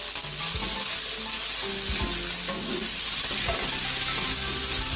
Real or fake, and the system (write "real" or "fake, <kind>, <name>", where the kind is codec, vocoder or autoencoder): real